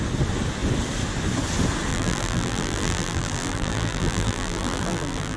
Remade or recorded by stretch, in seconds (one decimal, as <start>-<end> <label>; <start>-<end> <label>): 0.0-1.9 recorded; 1.9-5.4 remade